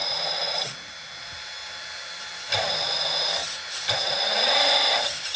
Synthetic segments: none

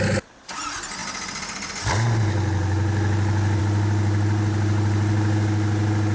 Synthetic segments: none

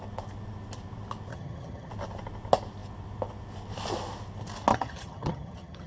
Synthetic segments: 1.3-1.9 (vocoder, HiFi-GAN); 4.7-5.9

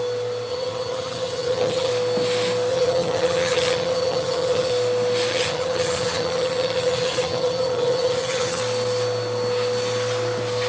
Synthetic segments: 0.5-1.9 (vocoder, HiFi-GAN); 2.7-4.7; 5.3-8.6

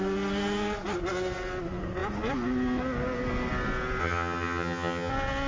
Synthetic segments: 4.0-5.1 (vocoder, HiFi-GAN)

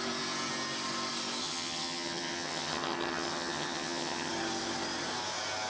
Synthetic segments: 1.4-4.3 (vocoder, HiFi-GAN)

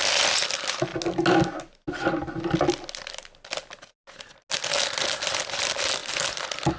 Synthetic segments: none